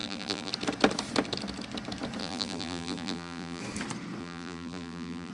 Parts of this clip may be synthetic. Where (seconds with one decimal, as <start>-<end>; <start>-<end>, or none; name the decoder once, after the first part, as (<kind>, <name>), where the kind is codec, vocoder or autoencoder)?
0.0-0.5 (vocoder, BigVGAN v2); 2.2-3.6; 4.2-5.3